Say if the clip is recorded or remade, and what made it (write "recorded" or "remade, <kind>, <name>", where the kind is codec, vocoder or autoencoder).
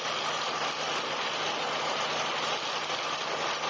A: recorded